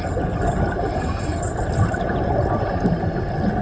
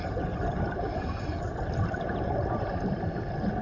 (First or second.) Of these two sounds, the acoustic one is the first